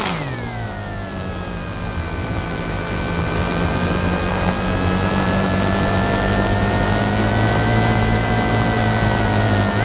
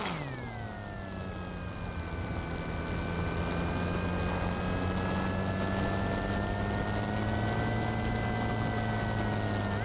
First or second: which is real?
second